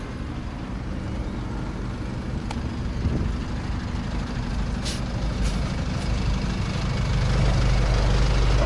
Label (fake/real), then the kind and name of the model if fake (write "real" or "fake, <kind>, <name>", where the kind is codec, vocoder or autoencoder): real